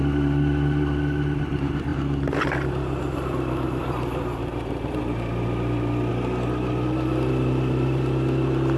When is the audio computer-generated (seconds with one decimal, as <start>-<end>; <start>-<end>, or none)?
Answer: 0.0-8.8